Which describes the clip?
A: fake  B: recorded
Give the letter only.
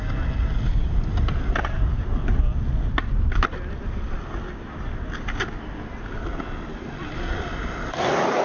B